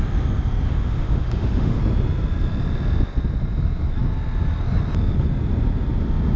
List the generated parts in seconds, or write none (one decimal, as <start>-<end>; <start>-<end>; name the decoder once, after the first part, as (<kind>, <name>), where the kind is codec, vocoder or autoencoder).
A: 0.7-1.8 (autoencoder, DAC-VAE)